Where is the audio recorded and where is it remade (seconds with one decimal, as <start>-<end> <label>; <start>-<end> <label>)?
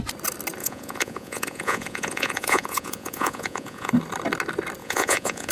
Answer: 0.0-0.6 recorded; 0.6-3.9 remade; 3.9-4.8 recorded; 4.8-5.5 remade